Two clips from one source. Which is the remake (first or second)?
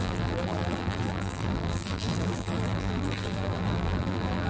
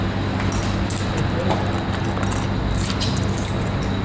first